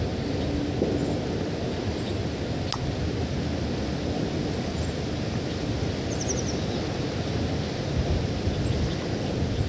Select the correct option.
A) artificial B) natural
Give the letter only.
B